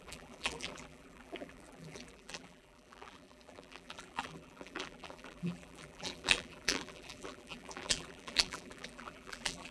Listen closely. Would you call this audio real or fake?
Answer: fake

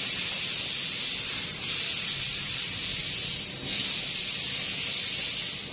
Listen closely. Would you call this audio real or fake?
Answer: real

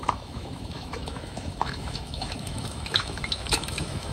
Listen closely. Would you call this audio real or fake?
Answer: fake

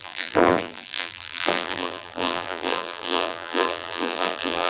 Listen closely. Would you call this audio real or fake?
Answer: fake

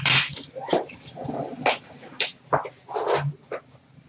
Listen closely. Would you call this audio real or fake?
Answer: real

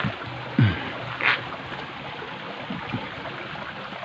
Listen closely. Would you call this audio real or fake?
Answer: real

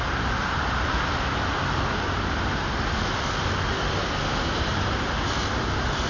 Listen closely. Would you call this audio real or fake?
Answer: real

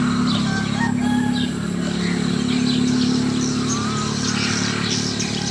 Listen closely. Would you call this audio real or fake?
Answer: real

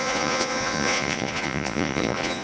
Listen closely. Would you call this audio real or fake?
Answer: fake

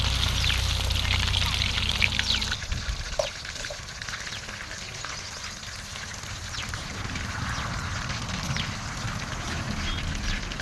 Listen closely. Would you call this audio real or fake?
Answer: real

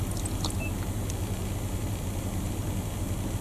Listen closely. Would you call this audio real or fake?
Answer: real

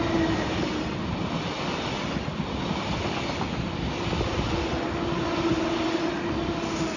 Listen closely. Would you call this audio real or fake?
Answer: real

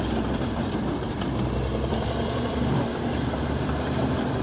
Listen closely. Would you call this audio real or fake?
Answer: fake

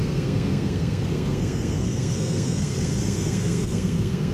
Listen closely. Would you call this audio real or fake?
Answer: fake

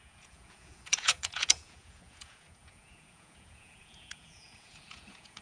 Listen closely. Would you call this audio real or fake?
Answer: fake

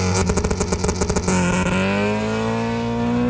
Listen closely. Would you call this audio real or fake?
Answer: real